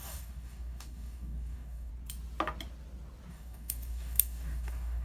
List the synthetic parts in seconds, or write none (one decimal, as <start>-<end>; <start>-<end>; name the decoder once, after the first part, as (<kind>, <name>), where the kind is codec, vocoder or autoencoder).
0.0-1.9 (codec, DAC); 3.3-5.0